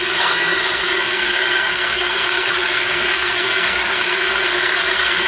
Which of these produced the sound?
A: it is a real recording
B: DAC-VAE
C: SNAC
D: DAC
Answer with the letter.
C